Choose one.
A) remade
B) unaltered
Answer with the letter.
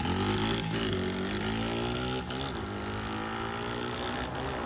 B